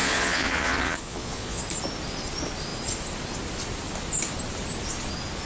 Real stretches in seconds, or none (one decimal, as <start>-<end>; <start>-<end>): 1.6-5.5